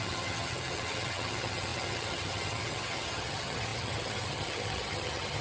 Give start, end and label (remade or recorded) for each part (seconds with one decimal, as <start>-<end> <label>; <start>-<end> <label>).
0.0-5.4 remade